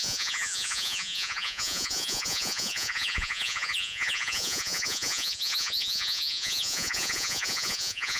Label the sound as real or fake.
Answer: fake